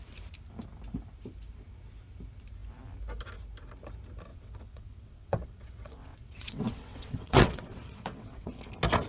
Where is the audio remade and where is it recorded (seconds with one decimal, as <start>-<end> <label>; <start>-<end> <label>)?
0.0-4.3 recorded; 4.3-8.6 remade; 8.6-9.1 recorded